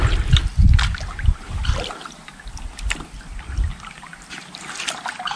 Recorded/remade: recorded